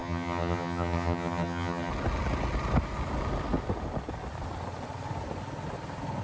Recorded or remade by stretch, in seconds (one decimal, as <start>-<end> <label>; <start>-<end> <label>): 0.0-1.9 remade; 1.9-6.2 recorded